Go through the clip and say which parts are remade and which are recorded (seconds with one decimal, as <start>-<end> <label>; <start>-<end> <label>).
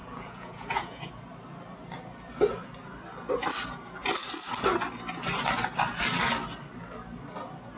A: 0.0-1.1 remade; 1.1-7.8 recorded